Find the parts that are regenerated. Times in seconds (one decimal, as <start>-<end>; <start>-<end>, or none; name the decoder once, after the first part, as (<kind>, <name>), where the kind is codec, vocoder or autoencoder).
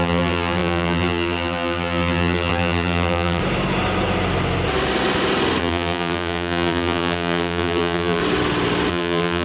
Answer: 0.0-3.4 (vocoder, BigVGAN v2); 5.6-8.2; 8.9-9.4